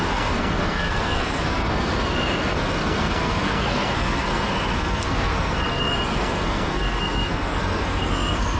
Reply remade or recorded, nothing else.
remade